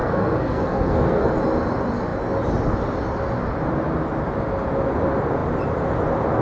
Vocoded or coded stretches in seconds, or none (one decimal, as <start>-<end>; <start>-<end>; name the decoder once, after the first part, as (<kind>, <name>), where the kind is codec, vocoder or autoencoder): 0.0-1.3 (codec, SNAC)

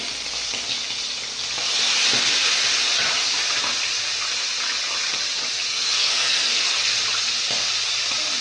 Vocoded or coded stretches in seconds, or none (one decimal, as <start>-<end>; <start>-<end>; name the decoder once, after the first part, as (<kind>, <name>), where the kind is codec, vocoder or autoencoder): 5.7-7.0 (codec, SNAC)